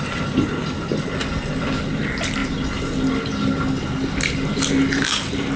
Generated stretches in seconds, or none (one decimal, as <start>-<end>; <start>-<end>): none